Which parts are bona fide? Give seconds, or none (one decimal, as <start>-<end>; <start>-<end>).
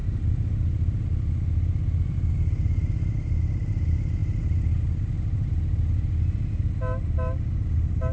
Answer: 0.0-8.1